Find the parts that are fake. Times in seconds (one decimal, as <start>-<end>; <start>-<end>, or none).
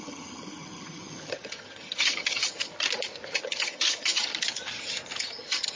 0.0-2.7; 3.3-4.3; 5.2-5.8